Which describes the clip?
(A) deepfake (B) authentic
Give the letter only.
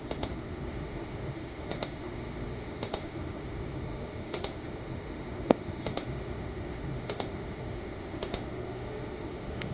A